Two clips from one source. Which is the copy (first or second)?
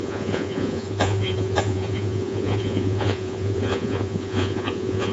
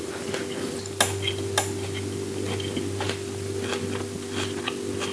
first